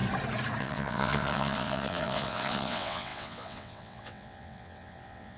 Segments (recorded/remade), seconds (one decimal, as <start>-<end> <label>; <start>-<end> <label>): 0.0-0.6 recorded; 0.6-5.4 remade